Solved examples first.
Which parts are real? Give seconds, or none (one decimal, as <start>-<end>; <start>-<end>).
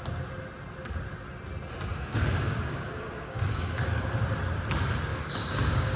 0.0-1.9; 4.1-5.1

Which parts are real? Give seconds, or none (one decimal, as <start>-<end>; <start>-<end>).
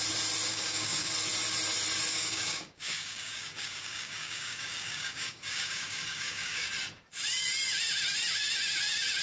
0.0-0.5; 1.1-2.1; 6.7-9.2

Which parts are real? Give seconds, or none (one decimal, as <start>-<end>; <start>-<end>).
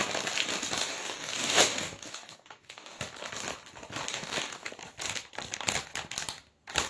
0.0-0.8; 3.0-4.1; 4.7-6.9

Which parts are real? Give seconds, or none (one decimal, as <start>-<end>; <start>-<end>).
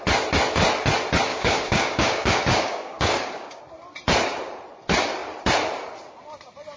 0.0-1.3; 3.6-6.8